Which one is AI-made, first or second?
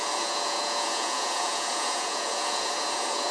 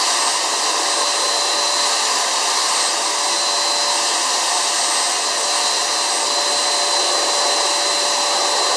first